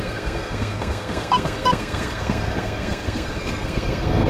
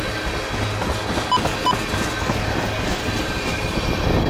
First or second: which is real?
second